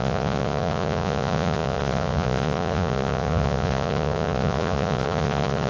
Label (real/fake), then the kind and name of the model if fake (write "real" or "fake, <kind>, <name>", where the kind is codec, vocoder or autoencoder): fake, vocoder, Vocos